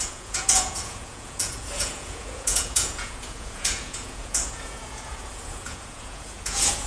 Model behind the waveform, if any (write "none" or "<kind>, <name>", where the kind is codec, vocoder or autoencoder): vocoder, Vocos